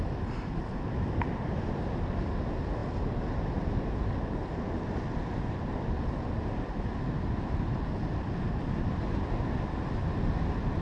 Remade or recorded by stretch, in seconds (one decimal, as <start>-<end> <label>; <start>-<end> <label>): 0.0-10.8 recorded